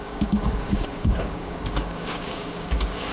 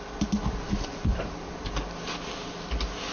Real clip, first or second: second